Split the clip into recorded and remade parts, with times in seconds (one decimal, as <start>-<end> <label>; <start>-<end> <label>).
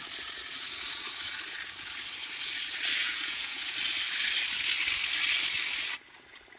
0.0-3.0 recorded; 3.0-3.6 remade; 3.6-6.6 recorded